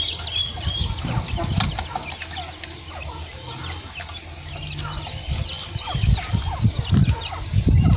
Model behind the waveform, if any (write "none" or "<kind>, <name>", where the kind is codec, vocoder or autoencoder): none